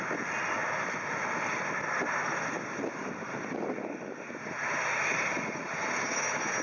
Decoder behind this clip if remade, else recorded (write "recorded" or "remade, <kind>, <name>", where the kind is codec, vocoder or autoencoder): recorded